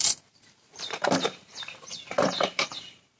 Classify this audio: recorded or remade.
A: remade